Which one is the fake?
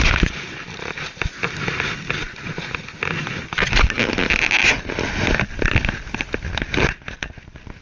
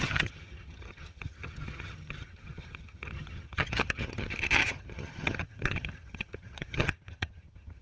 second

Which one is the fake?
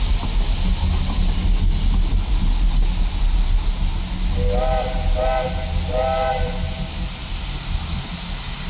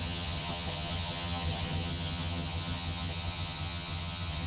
second